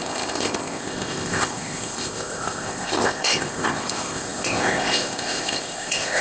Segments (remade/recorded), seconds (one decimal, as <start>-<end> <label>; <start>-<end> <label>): 0.0-6.2 remade